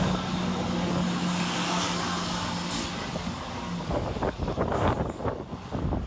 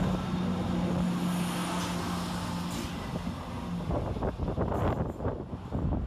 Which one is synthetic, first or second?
first